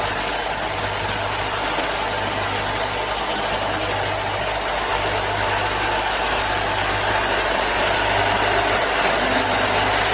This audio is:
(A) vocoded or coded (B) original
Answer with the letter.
B